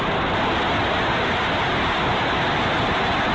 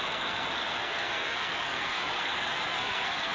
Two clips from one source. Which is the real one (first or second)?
first